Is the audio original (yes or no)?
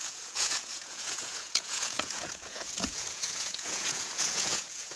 no